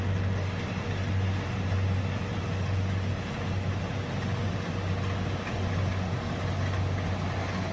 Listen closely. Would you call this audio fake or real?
real